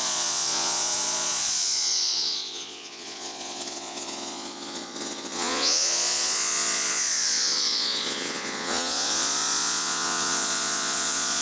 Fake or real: fake